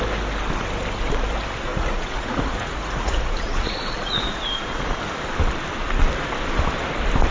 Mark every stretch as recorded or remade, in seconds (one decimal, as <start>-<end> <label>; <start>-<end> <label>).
0.0-1.7 recorded; 1.7-5.0 remade; 5.0-7.3 recorded